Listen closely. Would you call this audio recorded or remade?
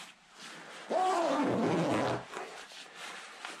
recorded